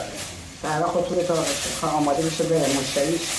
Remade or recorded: recorded